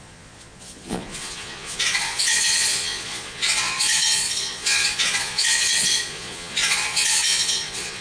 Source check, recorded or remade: remade